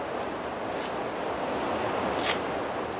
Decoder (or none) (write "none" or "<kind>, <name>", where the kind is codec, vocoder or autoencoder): none